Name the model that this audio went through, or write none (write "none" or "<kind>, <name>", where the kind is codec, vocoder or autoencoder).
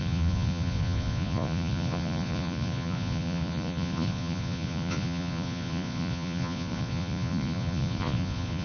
vocoder, Vocos